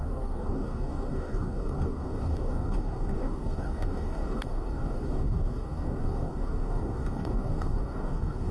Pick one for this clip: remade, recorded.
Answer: remade